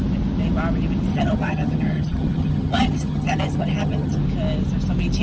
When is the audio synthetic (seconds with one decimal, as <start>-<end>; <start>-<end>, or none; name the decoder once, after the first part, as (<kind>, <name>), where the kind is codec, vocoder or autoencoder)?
1.1-4.2 (vocoder, HiFi-GAN)